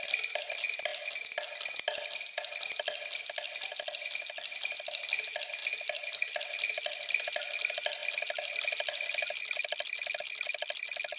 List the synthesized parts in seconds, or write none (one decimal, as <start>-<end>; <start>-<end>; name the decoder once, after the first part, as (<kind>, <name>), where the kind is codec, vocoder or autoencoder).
none